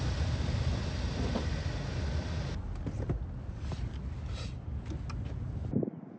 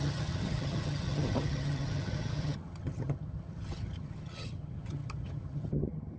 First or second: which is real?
first